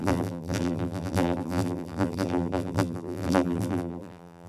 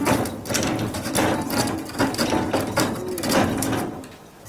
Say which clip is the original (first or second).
second